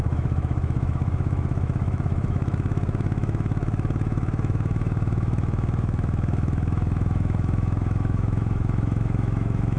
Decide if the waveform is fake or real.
fake